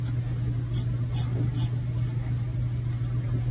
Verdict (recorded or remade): recorded